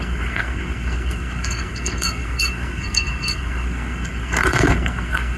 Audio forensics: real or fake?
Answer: fake